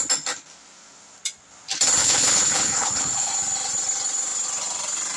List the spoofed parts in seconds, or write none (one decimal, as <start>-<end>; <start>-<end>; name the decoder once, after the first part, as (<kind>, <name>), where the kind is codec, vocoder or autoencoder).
2.0-3.3 (codec, HILCodec)